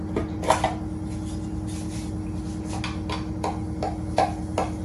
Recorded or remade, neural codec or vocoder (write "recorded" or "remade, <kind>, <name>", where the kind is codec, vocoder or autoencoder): recorded